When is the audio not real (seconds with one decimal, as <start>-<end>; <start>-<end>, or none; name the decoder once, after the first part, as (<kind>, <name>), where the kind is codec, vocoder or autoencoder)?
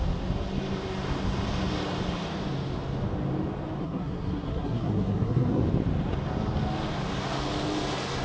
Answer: 3.8-5.6 (codec, SNAC)